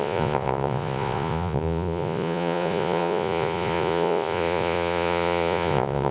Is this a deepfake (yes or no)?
yes